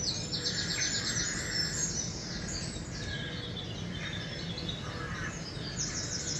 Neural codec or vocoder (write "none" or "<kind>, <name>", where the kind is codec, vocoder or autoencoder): none